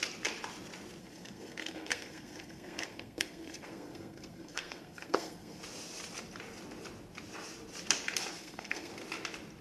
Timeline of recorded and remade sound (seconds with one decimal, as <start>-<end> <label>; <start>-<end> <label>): 0.0-1.0 recorded; 1.0-5.6 remade; 5.6-8.4 recorded; 8.4-8.9 remade; 8.9-9.6 recorded